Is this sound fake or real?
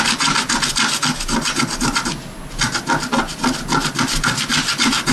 real